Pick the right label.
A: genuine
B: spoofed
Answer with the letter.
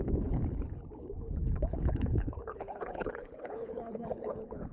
B